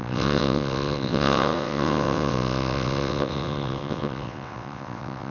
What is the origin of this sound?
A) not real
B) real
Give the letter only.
A